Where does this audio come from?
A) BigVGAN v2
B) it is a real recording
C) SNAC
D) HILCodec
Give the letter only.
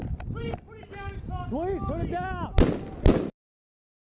B